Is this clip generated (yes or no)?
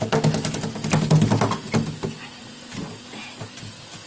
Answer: no